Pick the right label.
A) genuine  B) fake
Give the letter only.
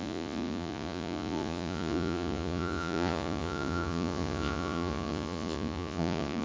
B